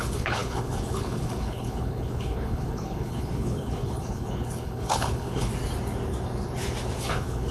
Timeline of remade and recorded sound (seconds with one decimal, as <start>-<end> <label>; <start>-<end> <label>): 0.0-5.5 remade; 5.5-7.0 recorded; 7.0-7.5 remade